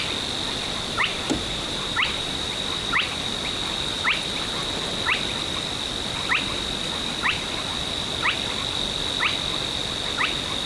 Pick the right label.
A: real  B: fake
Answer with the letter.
A